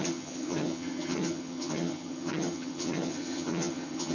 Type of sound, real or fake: fake